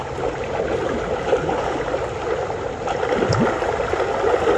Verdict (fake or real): real